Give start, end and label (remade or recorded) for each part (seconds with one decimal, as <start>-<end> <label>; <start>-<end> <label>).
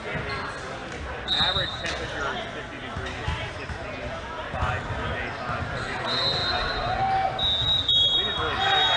0.0-9.0 recorded